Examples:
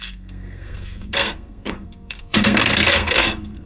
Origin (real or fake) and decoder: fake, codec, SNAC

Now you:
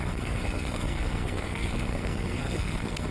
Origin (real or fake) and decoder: fake, codec, SNAC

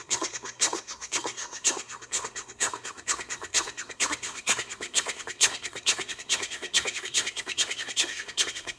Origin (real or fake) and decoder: fake, codec, SNAC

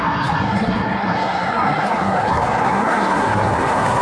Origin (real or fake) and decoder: fake, codec, SNAC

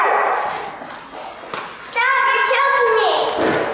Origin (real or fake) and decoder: real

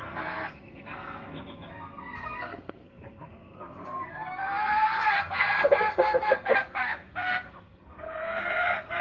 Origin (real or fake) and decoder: fake, codec, SNAC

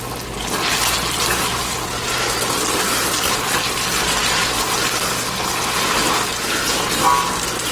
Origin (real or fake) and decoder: real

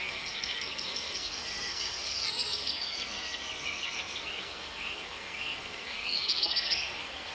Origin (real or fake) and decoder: fake, codec, SNAC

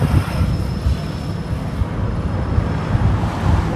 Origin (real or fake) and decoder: real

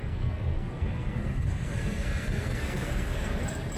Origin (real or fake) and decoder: fake, codec, SNAC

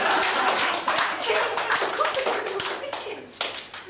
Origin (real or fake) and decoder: real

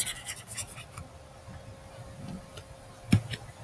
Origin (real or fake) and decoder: real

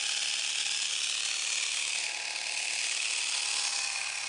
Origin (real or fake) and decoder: real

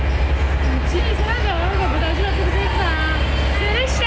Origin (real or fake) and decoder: real